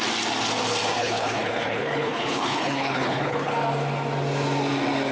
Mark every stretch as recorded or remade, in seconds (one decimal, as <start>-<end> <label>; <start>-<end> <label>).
0.0-1.0 recorded; 1.0-3.5 remade; 3.5-5.1 recorded